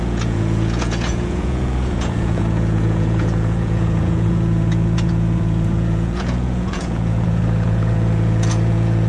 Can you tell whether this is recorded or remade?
remade